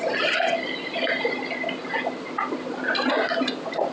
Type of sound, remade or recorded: recorded